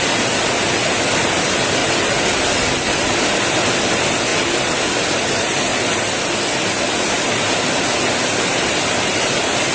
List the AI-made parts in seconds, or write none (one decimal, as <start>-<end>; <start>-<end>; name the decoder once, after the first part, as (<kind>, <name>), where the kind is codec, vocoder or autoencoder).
none